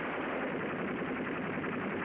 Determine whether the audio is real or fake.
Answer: real